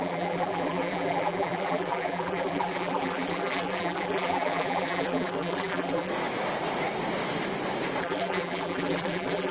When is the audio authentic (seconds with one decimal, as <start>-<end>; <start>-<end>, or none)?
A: 6.1-8.0